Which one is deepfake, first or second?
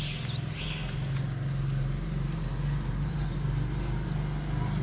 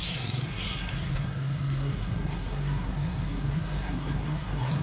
second